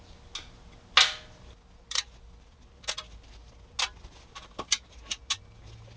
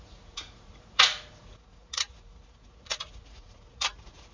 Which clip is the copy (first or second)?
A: second